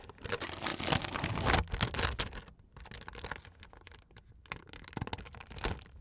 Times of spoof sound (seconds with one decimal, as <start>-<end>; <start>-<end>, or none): none